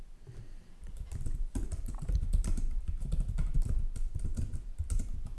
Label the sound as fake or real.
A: fake